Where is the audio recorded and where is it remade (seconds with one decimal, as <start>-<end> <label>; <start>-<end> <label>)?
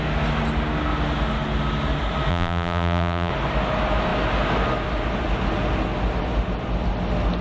0.0-2.3 recorded; 2.3-3.3 remade; 3.3-7.4 recorded